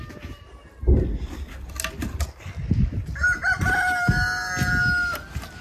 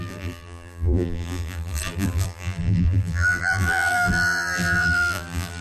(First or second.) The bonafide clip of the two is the first